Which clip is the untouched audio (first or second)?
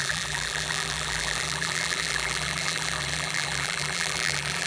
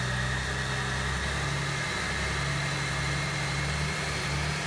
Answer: second